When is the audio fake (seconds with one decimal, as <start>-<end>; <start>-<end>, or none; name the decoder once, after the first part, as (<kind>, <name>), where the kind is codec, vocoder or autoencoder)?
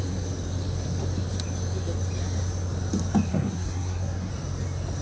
3.3-4.3 (codec, SNAC)